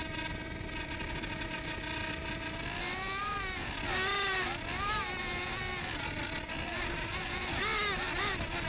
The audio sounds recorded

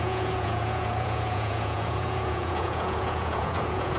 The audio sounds remade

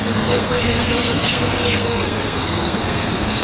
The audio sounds remade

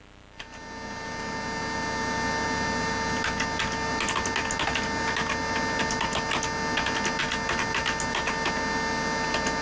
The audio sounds recorded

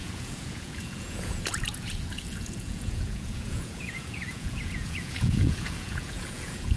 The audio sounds remade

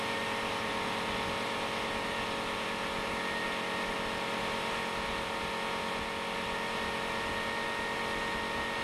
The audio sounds recorded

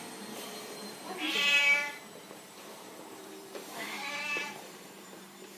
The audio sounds remade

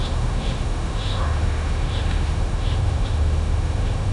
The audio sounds remade